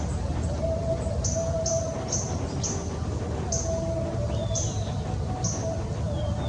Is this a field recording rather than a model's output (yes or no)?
yes